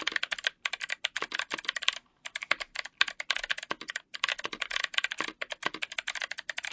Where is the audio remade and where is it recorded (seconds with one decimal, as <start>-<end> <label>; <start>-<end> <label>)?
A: 0.0-6.7 recorded